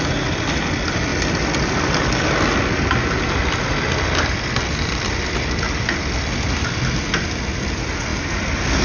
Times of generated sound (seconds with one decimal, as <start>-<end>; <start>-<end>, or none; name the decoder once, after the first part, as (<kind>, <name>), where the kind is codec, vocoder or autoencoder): none